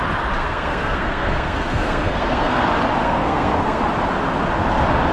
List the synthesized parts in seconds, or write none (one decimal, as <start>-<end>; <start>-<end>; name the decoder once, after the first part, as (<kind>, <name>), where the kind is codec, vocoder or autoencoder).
0.4-2.6 (codec, SNAC); 3.0-3.8